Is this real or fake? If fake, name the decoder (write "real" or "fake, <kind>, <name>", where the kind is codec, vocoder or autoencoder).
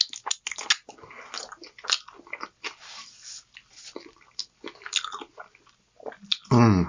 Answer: real